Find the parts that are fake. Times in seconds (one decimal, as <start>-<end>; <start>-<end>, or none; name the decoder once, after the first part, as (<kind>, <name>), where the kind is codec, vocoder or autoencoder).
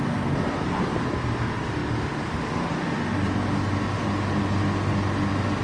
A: none